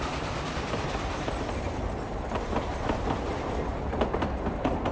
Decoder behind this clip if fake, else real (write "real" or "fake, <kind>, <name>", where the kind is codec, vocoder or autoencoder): real